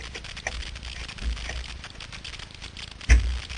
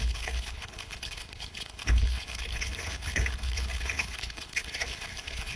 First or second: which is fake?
second